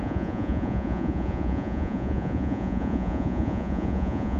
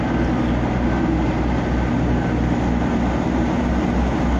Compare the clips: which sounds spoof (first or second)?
first